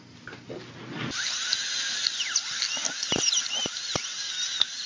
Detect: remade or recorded recorded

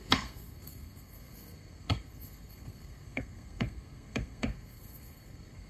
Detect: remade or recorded remade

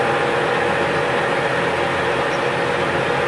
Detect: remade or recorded recorded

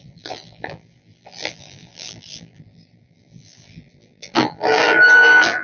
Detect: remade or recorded remade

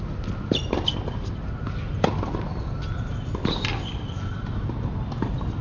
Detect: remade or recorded recorded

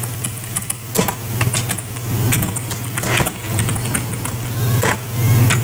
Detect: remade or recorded recorded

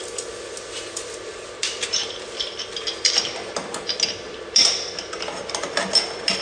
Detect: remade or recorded recorded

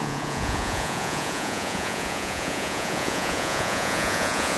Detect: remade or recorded remade